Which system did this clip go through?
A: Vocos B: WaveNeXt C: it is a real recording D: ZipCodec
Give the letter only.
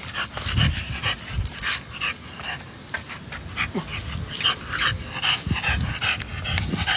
C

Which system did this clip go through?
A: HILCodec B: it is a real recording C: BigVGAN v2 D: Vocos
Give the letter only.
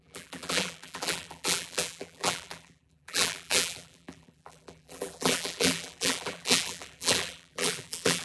C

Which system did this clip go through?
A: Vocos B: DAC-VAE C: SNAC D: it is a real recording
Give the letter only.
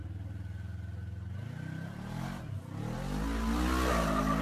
D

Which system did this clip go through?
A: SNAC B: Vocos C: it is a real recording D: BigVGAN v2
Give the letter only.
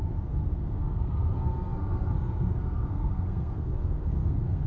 A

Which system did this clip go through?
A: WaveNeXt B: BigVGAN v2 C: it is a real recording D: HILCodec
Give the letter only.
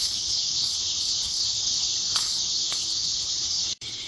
D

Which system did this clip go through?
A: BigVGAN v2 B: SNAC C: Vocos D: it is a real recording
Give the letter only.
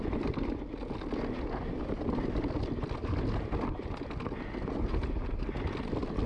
D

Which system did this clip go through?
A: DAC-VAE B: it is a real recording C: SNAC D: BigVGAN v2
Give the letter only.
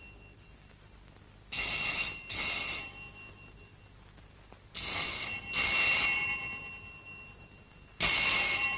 B